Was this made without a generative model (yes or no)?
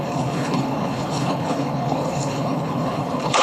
no